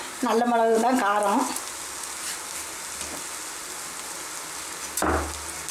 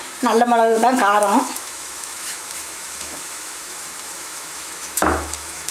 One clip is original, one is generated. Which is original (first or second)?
first